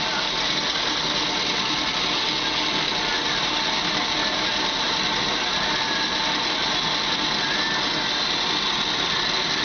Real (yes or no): yes